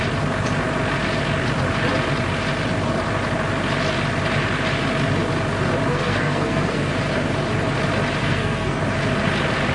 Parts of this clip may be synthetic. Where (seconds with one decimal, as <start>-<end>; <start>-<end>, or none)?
5.9-6.9; 8.2-8.8